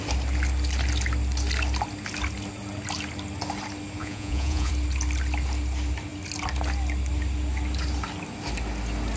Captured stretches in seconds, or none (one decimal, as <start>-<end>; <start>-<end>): 0.0-4.0; 4.7-9.2